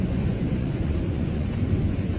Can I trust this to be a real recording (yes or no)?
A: no